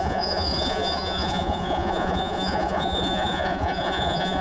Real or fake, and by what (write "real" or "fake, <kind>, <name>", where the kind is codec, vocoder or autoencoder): fake, vocoder, Vocos